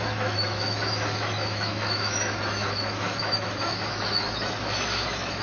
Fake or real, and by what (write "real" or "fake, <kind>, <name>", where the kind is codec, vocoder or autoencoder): fake, autoencoder, DAC-VAE